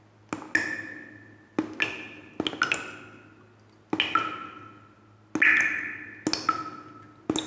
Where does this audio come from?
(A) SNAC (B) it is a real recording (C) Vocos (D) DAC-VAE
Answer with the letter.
B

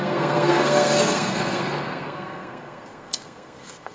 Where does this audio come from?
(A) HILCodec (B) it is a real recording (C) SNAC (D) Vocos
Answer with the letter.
C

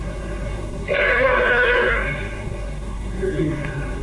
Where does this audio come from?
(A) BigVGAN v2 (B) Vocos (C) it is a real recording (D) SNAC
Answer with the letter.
D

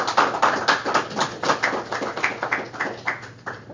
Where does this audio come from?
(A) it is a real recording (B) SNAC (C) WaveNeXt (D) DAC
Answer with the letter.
A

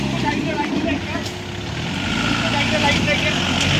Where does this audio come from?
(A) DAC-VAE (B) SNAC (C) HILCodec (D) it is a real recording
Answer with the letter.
D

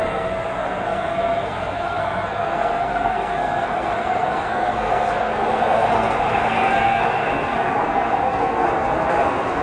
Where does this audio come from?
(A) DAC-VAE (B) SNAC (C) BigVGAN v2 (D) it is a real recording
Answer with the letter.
B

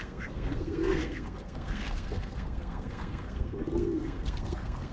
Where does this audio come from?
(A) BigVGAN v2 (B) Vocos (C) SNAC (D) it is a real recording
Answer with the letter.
C